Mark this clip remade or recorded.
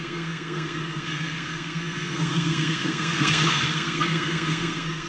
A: remade